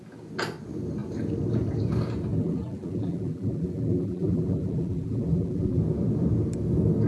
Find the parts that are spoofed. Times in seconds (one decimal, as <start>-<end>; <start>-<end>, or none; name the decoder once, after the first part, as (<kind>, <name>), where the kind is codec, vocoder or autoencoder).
2.3-5.8 (vocoder, BigVGAN v2)